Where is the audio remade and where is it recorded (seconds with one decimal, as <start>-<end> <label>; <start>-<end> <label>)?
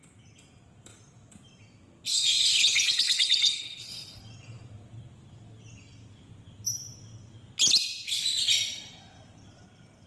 0.0-2.1 recorded; 2.1-4.2 remade; 4.2-10.1 recorded